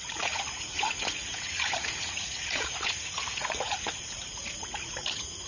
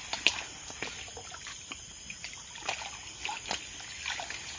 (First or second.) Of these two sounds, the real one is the second